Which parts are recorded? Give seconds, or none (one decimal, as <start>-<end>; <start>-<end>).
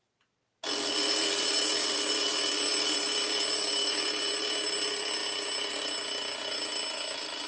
0.0-7.5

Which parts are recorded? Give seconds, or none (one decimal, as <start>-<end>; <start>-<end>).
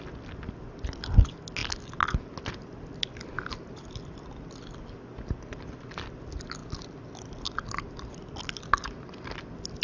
0.0-9.8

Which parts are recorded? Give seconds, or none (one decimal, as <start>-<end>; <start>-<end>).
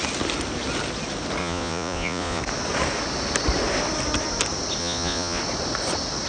0.0-1.4; 2.4-4.8; 5.4-6.3